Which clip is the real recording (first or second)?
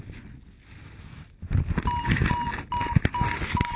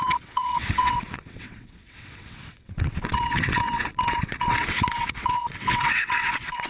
first